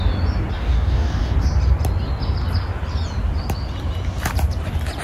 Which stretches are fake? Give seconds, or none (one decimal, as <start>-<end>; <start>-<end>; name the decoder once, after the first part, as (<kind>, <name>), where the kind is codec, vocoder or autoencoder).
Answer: 0.6-1.3 (codec, DAC)